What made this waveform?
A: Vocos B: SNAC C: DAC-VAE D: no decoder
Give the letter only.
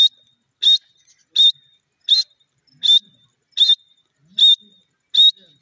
D